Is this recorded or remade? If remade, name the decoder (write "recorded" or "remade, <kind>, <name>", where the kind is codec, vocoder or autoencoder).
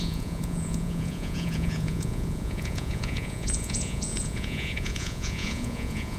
remade, vocoder, Vocos